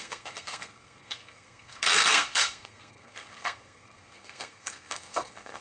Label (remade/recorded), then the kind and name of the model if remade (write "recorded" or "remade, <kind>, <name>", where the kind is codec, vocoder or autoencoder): remade, codec, SNAC